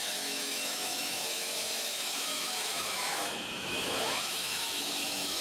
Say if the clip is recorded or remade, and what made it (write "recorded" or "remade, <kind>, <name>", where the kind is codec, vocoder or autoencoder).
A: remade, autoencoder, DAC-VAE